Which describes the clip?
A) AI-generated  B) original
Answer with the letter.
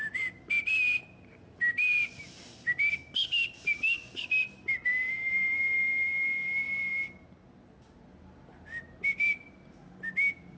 B